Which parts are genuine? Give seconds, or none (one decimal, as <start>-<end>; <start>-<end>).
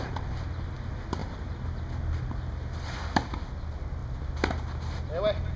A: 0.0-5.6